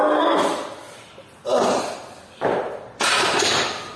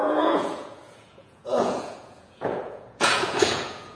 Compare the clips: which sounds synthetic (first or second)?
second